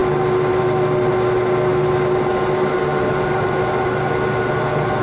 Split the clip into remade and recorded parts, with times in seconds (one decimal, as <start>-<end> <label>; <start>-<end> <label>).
0.0-0.6 remade; 0.6-1.7 recorded; 1.7-3.8 remade; 3.8-5.0 recorded